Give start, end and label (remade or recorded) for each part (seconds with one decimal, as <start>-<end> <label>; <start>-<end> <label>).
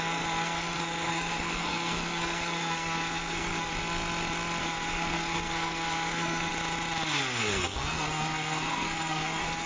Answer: 0.0-3.7 remade; 3.7-4.6 recorded; 4.6-6.5 remade; 6.5-7.4 recorded; 7.4-9.7 remade